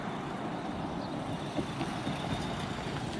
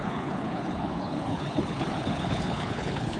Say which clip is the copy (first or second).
second